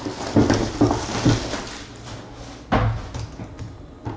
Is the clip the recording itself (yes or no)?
yes